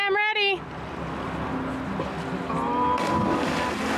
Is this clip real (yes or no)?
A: yes